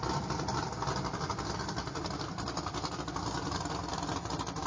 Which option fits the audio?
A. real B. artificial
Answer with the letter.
B